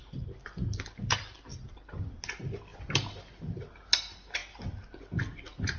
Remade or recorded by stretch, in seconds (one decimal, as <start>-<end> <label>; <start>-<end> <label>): 0.0-0.6 recorded; 0.6-1.5 remade; 1.5-2.3 recorded; 2.3-2.7 remade; 2.7-3.4 recorded; 3.4-5.8 remade